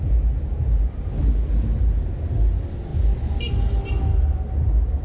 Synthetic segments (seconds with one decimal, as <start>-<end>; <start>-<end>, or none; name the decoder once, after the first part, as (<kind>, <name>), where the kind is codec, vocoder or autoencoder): none